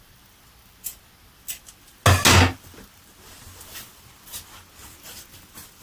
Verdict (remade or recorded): recorded